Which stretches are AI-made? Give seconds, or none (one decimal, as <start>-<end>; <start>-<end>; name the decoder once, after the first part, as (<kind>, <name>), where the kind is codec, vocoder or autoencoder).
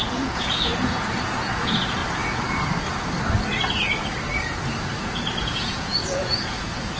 0.0-2.0 (vocoder, Vocos); 5.0-7.0